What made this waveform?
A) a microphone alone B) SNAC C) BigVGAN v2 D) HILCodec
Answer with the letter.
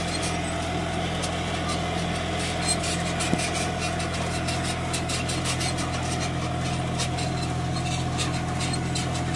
A